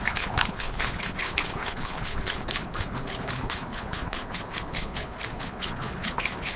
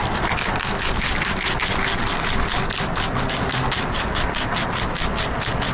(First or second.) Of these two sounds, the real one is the second